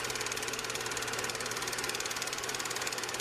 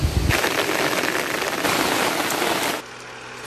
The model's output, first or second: first